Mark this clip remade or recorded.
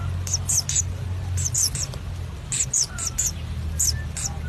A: recorded